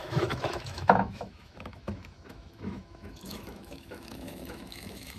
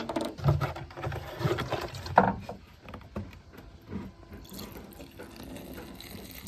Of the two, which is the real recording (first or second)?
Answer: second